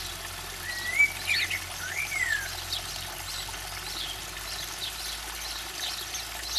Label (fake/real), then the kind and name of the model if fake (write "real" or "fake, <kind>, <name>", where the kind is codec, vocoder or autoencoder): real